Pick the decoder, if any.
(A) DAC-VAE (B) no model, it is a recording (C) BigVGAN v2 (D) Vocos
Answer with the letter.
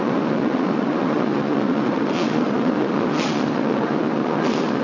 D